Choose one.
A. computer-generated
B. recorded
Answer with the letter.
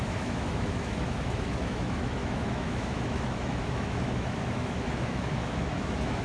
A